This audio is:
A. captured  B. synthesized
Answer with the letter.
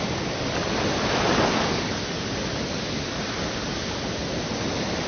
A